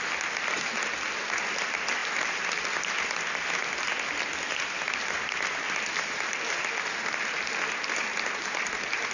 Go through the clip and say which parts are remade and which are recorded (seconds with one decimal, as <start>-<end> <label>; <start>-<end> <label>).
0.0-9.1 recorded